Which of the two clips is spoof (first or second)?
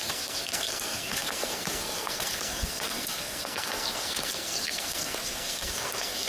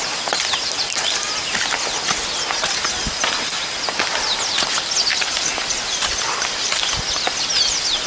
first